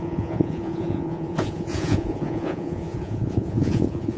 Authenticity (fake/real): fake